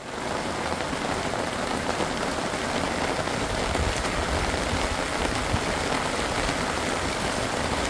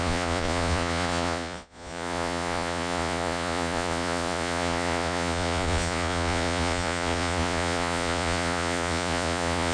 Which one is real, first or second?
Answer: first